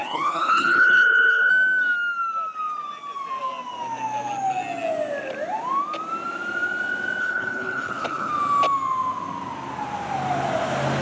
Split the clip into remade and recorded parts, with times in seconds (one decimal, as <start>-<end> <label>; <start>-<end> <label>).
0.0-1.5 remade; 1.5-7.2 recorded; 7.2-8.3 remade; 8.3-11.0 recorded